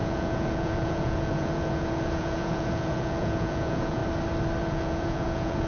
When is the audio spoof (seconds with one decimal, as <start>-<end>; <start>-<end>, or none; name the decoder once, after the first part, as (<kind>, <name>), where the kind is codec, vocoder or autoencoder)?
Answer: 0.0-4.0 (vocoder, Vocos); 4.6-5.7